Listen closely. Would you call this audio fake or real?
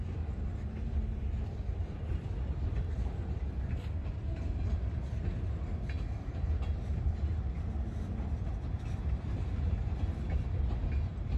real